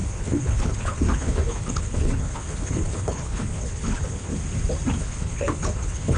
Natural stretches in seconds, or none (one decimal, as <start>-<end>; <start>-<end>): 4.3-5.0